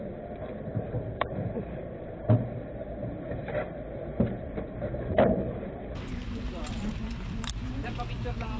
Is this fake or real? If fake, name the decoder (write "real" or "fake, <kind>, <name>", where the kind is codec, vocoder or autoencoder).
fake, vocoder, BigVGAN v2